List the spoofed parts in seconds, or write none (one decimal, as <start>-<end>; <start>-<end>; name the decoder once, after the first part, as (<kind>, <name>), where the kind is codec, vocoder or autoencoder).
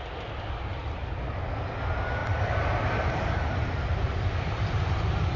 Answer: none